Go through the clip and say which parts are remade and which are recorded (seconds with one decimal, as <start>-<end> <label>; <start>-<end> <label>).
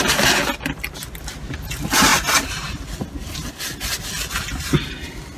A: 0.0-2.1 recorded; 2.1-2.8 remade; 2.8-5.4 recorded